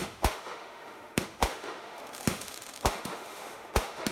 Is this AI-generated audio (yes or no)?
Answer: yes